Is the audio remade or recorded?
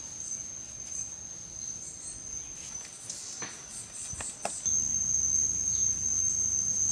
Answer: recorded